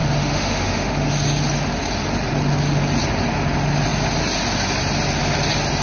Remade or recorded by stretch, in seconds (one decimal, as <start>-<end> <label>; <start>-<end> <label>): 0.0-1.1 remade; 1.1-5.8 recorded